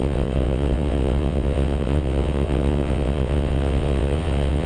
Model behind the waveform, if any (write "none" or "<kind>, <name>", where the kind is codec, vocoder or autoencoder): vocoder, WaveNeXt